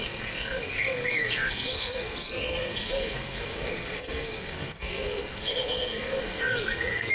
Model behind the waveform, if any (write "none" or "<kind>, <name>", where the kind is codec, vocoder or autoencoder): codec, SNAC